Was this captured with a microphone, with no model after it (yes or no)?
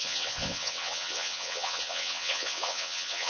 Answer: no